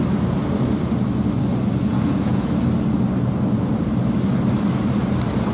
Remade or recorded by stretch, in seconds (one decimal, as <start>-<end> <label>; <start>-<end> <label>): 0.0-1.9 recorded; 1.9-2.5 remade; 2.5-5.5 recorded